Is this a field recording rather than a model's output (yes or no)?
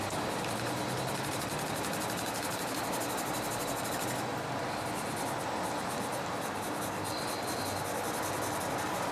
yes